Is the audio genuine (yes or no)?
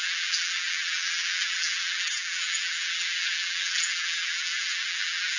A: no